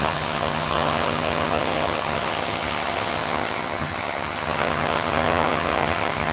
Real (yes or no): no